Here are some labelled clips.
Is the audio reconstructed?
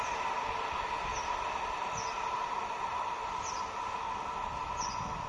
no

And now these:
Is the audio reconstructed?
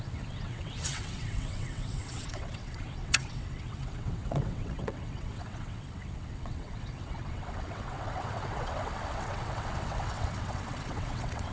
yes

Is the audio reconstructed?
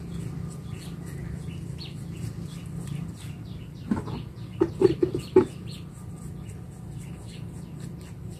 no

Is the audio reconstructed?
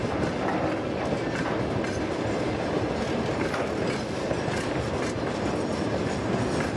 no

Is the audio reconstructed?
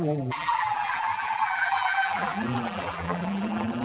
yes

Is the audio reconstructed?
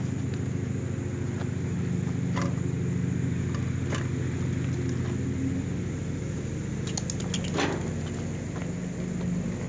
no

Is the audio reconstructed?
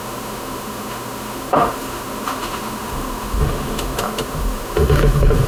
yes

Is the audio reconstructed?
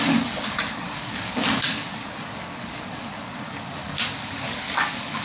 yes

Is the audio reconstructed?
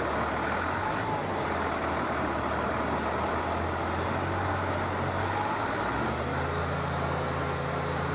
no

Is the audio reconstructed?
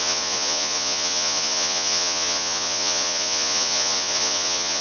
yes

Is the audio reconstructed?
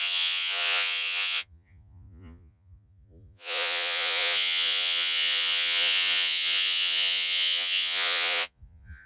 yes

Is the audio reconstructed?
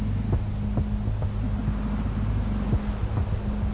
no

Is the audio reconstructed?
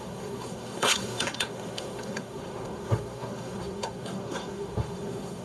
yes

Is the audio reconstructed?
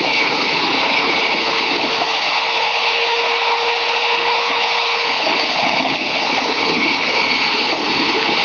yes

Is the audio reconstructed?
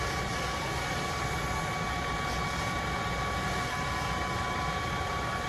no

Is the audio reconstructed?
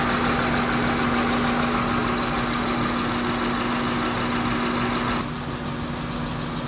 no